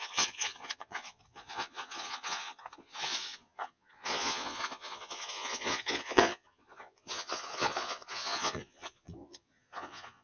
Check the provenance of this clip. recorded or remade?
remade